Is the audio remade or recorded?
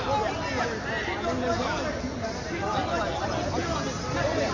recorded